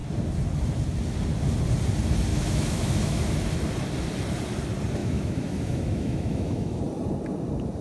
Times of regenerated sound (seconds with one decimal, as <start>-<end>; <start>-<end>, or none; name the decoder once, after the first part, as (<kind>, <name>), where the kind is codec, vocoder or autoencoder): 2.3-3.2 (autoencoder, DAC-VAE); 5.0-6.8

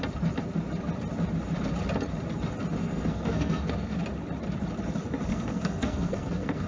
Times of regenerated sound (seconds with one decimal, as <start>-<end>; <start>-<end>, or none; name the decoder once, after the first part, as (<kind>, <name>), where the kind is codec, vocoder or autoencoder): 2.8-4.0 (codec, SNAC); 5.3-6.7

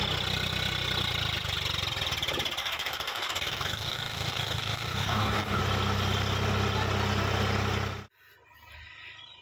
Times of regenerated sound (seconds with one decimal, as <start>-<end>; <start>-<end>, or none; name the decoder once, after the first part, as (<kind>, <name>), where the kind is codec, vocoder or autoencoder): 2.6-5.6 (codec, DAC)

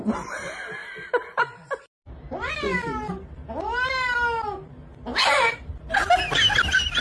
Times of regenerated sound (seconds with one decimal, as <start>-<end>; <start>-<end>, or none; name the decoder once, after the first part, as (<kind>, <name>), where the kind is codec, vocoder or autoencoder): 0.8-2.5 (vocoder, BigVGAN v2)

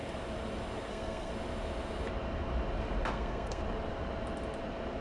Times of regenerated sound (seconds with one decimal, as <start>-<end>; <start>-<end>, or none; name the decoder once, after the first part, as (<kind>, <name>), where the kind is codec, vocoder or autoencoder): 0.9-1.3 (codec, SNAC); 3.1-3.6

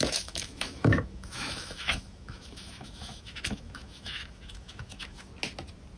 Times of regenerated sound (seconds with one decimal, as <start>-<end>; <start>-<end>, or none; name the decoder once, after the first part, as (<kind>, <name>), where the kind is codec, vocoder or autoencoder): 0.0-5.3 (autoencoder, DAC-VAE)

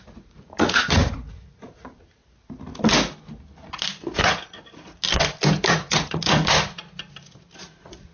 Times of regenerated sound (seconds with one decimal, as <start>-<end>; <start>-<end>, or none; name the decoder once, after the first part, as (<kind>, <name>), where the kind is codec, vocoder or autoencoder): 0.0-2.2 (vocoder, Vocos); 4.2-5.0; 5.7-6.4; 7.6-8.1

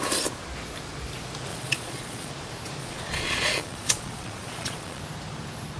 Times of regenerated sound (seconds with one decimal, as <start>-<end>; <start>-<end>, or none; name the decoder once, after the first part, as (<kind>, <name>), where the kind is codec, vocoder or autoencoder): 1.5-2.3 (vocoder, Vocos); 2.8-5.0